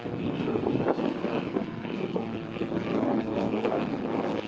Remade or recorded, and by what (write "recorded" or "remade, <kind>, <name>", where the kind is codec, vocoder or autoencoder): remade, codec, SNAC